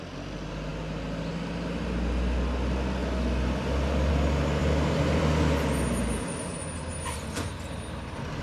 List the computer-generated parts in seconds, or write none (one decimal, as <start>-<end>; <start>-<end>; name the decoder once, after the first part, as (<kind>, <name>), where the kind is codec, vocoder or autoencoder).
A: 4.6-5.2 (vocoder, BigVGAN v2)